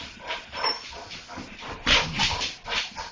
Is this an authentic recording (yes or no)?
yes